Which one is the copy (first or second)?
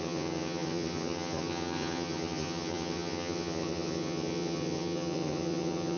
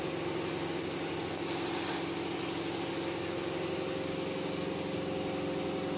first